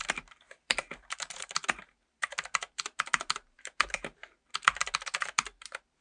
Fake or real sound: fake